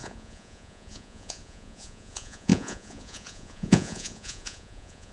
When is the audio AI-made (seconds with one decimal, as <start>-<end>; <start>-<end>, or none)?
0.0-5.1